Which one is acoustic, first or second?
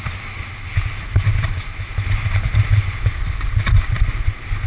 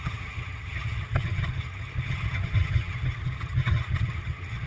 first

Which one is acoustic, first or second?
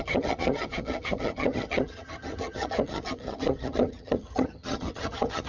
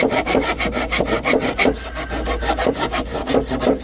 second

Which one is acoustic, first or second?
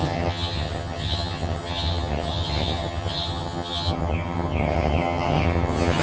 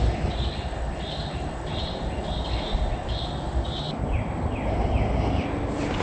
second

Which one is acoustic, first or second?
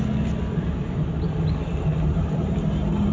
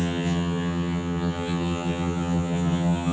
first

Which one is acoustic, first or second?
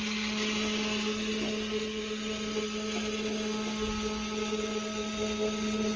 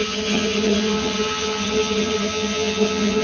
first